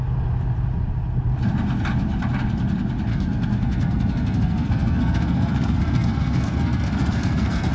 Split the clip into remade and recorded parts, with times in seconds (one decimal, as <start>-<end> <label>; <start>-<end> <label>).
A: 0.0-3.1 recorded; 3.1-7.7 remade

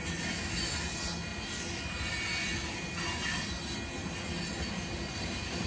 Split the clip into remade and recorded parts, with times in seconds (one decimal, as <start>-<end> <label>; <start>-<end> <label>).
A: 0.0-5.7 recorded

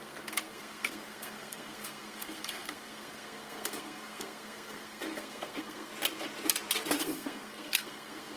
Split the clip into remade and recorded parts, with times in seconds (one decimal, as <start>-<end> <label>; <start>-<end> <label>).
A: 0.0-5.9 remade; 5.9-7.0 recorded; 7.0-8.4 remade

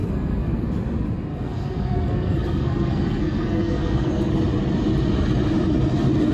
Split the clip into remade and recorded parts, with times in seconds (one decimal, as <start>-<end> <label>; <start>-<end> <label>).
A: 0.0-0.7 remade; 0.7-1.3 recorded; 1.3-4.3 remade; 4.3-6.3 recorded

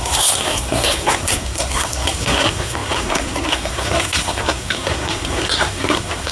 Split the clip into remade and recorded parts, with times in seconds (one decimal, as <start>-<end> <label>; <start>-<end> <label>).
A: 0.0-6.3 remade

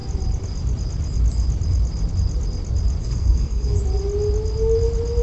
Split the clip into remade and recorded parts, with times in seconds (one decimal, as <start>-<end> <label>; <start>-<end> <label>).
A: 0.0-3.0 recorded; 3.0-3.8 remade; 3.8-5.2 recorded

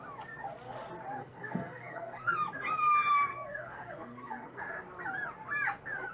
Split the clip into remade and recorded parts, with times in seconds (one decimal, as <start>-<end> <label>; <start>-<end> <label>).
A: 0.0-1.2 recorded; 1.2-2.3 remade; 2.3-3.3 recorded; 3.3-4.6 remade; 4.6-6.1 recorded

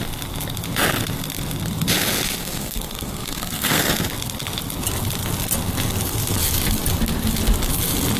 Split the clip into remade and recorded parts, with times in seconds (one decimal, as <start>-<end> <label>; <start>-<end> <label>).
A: 0.0-2.4 recorded; 2.4-3.9 remade; 3.9-8.2 recorded